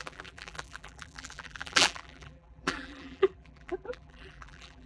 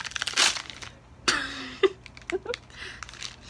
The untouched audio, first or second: second